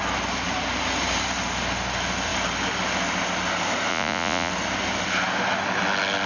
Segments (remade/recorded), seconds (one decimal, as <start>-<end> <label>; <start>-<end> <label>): 0.0-3.9 recorded; 3.9-4.5 remade; 4.5-6.3 recorded